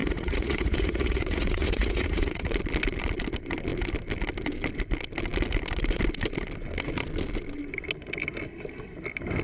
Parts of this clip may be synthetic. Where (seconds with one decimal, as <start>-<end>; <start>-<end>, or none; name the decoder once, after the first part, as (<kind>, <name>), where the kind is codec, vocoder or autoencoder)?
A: 0.0-2.5 (vocoder, Vocos)